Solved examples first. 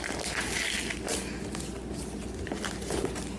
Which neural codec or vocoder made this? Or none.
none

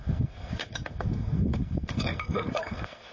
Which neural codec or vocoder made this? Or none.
codec, SNAC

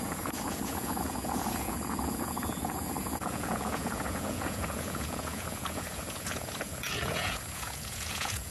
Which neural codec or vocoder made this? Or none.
vocoder, Vocos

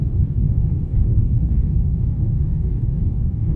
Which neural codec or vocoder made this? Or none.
codec, DAC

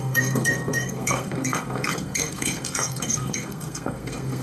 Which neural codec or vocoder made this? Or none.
codec, SNAC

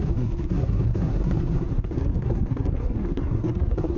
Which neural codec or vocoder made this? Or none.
codec, SNAC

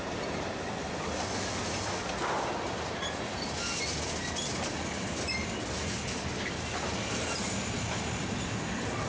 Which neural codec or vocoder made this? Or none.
none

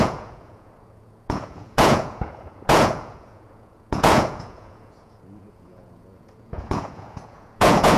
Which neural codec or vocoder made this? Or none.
vocoder, Vocos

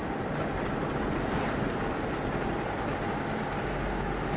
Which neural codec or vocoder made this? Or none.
none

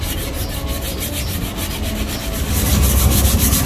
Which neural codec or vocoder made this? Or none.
none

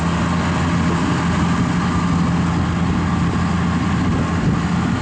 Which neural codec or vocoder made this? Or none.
none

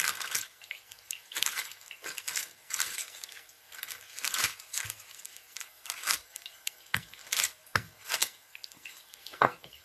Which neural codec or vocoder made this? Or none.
codec, SNAC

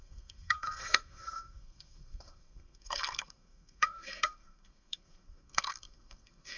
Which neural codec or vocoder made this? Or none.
codec, SNAC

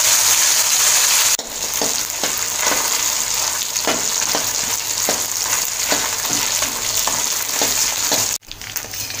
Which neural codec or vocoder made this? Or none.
none